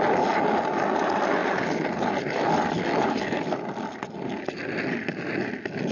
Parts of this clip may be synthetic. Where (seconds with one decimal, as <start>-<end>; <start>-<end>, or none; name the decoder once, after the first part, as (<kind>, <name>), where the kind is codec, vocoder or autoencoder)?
none